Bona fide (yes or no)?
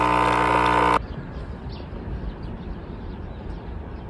yes